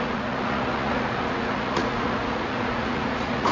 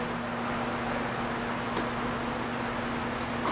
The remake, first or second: first